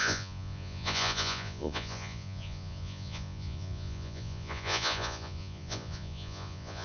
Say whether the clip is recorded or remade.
remade